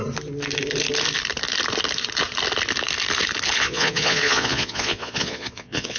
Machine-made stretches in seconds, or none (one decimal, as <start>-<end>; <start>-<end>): 3.6-6.0

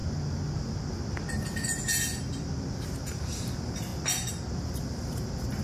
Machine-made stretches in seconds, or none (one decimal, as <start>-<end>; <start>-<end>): 3.0-3.9; 4.7-5.6

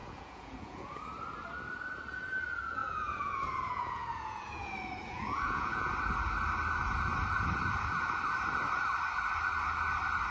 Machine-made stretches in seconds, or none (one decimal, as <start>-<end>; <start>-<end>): 0.0-0.9; 2.8-5.9

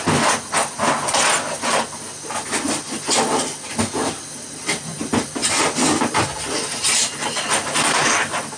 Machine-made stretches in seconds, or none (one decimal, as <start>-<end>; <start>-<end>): none

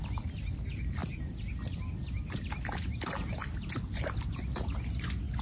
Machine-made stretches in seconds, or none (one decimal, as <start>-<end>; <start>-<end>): none